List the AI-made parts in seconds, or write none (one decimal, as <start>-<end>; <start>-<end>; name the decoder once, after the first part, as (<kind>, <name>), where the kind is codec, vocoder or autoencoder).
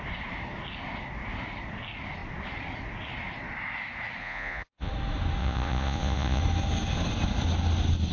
4.2-4.9 (vocoder, Vocos); 5.4-6.4